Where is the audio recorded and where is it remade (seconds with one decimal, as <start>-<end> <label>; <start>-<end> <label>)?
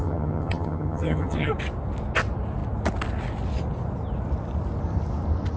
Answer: 0.0-1.5 remade; 1.5-5.6 recorded